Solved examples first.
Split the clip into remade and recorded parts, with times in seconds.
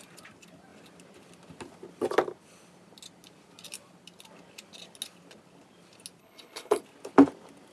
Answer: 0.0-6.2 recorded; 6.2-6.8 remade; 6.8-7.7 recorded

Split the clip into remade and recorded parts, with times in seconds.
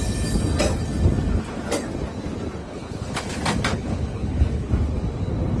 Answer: 0.0-2.6 recorded; 2.6-3.3 remade; 3.3-3.7 recorded; 3.7-4.7 remade; 4.7-5.6 recorded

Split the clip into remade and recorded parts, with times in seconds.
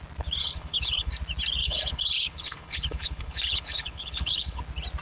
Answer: 0.0-0.4 recorded; 0.4-1.1 remade; 1.1-1.6 recorded; 1.6-4.6 remade; 4.6-5.0 recorded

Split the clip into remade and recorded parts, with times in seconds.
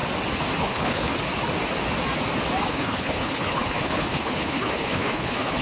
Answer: 0.0-0.6 recorded; 0.6-1.1 remade; 1.1-2.7 recorded; 2.7-5.6 remade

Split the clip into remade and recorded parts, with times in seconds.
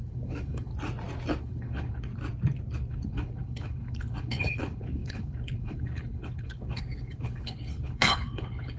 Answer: 0.0-0.7 remade; 0.7-1.4 recorded; 1.4-2.1 remade; 2.1-2.9 recorded; 2.9-8.8 remade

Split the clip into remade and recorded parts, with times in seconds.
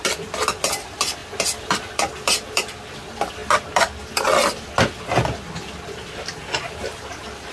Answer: 0.0-7.5 recorded